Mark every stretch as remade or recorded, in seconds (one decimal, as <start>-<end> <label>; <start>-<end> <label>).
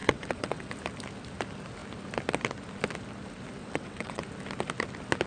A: 0.0-0.7 remade; 0.7-3.6 recorded; 3.6-4.2 remade; 4.2-5.3 recorded